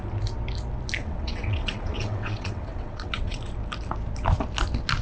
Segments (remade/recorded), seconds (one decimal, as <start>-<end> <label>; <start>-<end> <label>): 0.0-1.0 recorded; 1.0-3.4 remade; 3.4-5.0 recorded